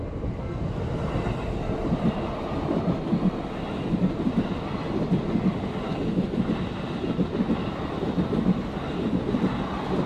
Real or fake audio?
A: real